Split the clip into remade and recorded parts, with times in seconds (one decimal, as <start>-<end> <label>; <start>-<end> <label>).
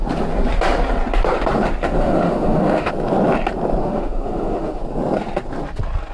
0.0-2.0 recorded; 2.0-2.9 remade; 2.9-3.8 recorded; 3.8-4.8 remade; 4.8-6.1 recorded